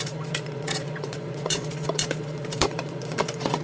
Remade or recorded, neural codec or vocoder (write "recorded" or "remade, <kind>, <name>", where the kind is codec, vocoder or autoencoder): remade, vocoder, Vocos